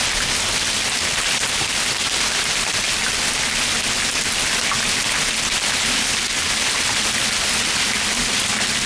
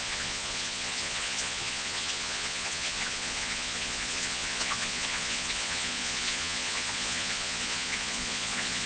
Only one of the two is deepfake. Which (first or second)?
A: second